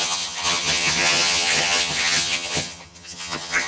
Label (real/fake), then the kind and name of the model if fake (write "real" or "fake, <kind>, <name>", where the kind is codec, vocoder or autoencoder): fake, vocoder, HiFi-GAN